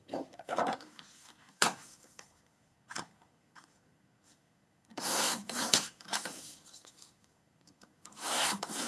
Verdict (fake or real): fake